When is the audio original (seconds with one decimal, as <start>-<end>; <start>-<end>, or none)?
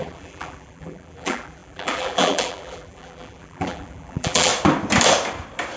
4.5-5.8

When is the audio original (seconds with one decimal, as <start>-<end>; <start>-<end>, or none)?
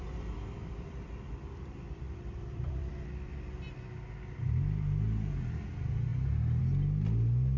0.0-0.6; 2.9-7.6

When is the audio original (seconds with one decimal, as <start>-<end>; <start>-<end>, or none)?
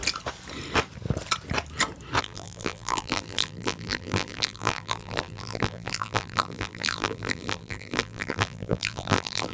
0.0-2.2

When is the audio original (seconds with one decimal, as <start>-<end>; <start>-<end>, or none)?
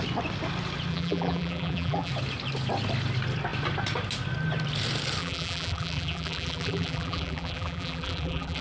0.0-0.9; 2.1-5.2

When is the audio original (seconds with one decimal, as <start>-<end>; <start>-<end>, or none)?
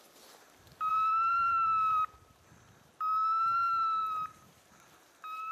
0.0-0.9; 2.5-4.0; 4.7-5.5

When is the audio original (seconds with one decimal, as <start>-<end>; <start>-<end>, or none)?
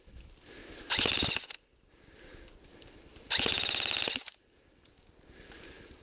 0.6-4.2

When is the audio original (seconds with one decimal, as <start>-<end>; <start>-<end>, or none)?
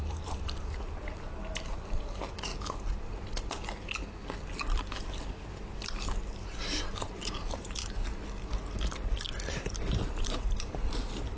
2.5-6.4; 7.8-9.5